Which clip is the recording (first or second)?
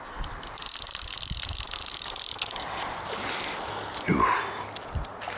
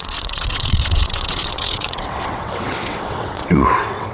first